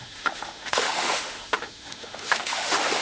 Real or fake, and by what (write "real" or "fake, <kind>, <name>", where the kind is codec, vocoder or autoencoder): fake, autoencoder, DAC-VAE